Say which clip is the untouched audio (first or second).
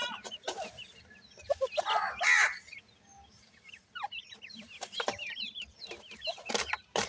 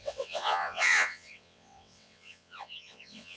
first